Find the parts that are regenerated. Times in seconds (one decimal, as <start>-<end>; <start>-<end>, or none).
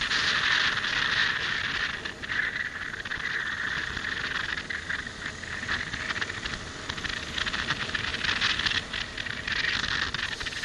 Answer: none